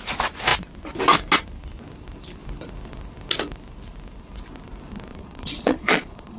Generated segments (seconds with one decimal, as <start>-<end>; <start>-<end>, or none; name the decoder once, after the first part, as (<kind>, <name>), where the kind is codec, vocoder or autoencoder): 5.1-6.4 (vocoder, Vocos)